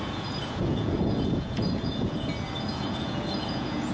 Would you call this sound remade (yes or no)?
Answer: yes